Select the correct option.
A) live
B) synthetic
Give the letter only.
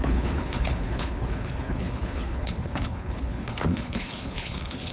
B